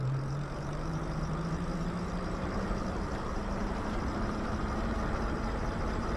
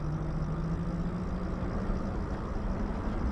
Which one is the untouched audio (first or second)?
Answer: second